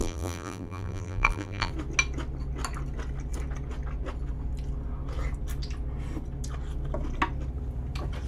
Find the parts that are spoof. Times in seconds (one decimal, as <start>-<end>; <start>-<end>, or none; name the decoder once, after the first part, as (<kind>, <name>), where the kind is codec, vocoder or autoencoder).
0.0-1.7 (vocoder, BigVGAN v2)